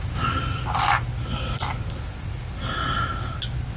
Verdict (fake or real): real